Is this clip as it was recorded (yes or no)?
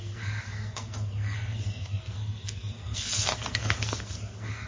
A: no